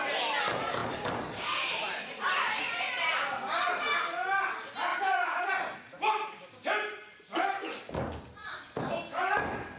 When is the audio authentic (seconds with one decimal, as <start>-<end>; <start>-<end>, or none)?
0.0-9.8